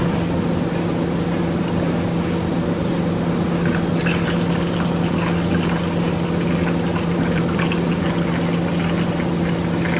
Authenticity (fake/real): real